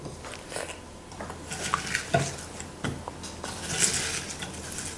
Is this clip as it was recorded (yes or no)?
yes